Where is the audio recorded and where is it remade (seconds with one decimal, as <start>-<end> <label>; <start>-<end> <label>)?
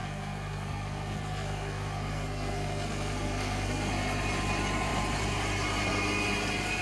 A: 0.0-3.9 remade; 3.9-6.8 recorded